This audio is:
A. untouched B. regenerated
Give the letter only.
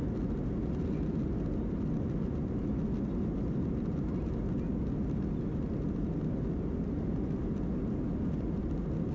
A